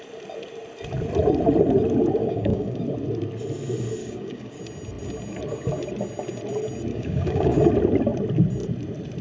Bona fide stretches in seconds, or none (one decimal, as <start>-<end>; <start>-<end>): 0.0-2.2; 2.8-4.0; 4.6-6.9; 7.6-9.2